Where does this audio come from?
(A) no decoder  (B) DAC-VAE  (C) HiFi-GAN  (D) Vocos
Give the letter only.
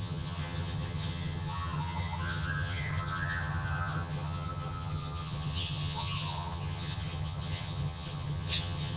C